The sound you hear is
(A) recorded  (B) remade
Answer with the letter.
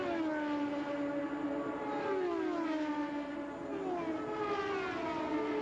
A